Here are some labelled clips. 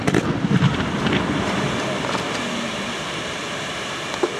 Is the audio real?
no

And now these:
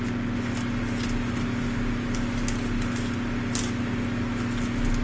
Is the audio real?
yes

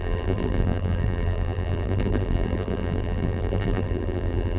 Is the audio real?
no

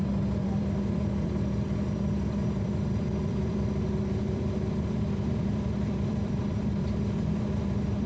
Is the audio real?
no